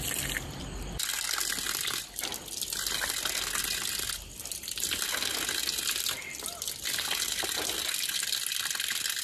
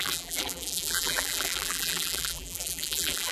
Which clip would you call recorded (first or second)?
first